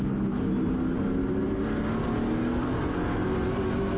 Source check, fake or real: real